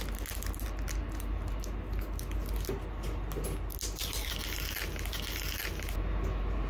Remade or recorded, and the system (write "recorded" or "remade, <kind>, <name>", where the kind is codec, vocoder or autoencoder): recorded